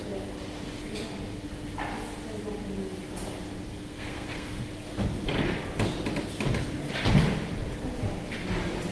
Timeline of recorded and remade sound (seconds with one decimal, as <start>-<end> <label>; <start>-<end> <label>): 0.0-3.7 recorded; 3.7-4.6 remade; 4.6-8.9 recorded